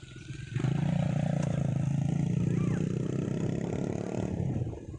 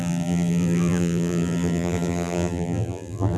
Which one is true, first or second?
first